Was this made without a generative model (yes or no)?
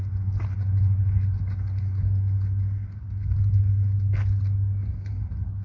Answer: yes